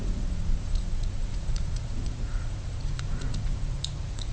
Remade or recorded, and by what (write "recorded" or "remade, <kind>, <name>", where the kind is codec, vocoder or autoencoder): remade, vocoder, Vocos